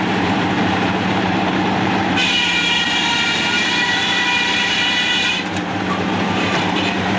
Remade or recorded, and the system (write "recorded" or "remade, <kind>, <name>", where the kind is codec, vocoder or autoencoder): remade, vocoder, BigVGAN v2